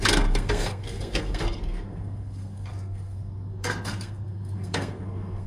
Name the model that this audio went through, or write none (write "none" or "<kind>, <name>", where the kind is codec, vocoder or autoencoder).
codec, SNAC